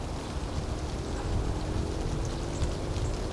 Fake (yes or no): no